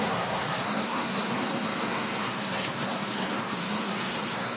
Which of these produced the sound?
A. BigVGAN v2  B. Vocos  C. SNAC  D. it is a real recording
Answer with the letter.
C